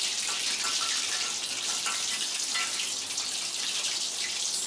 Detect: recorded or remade recorded